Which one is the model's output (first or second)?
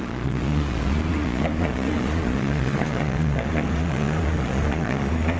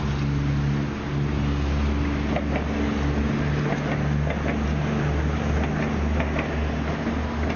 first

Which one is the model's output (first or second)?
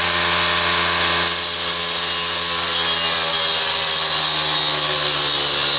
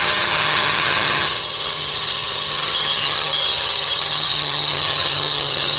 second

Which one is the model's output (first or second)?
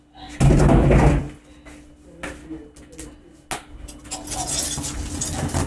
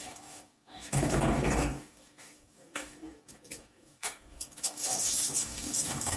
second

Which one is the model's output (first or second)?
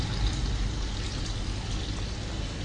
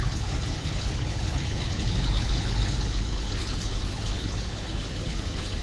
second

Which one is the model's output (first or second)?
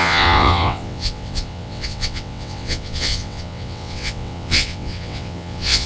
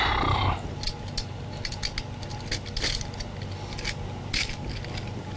first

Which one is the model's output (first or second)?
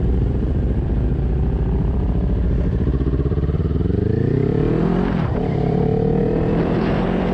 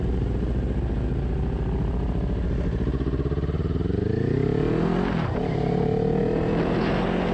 first